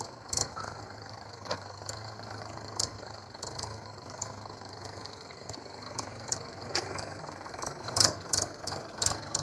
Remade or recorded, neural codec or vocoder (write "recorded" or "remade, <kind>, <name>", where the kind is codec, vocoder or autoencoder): remade, codec, SNAC